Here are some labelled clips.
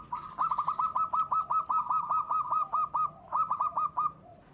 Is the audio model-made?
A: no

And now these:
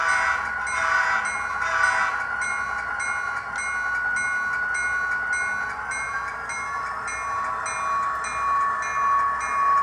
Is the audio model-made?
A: no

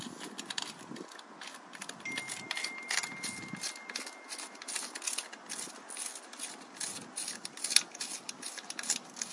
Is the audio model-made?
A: no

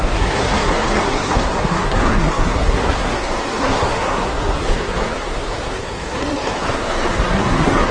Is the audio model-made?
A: yes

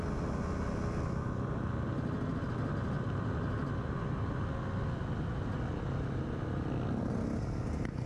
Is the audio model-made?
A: no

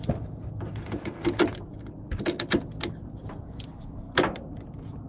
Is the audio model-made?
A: no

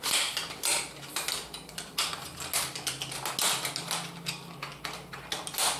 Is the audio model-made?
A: no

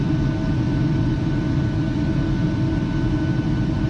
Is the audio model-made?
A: no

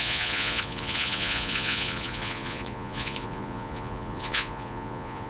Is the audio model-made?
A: yes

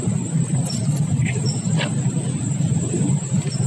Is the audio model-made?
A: no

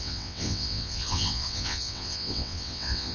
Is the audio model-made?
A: yes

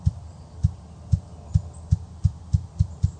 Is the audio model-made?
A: no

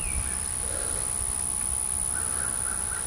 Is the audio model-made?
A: no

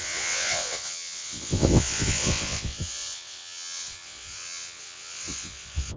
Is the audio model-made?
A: yes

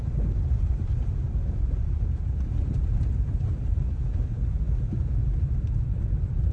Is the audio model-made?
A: yes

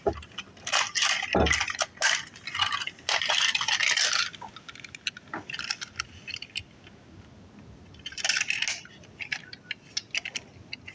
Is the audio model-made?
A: no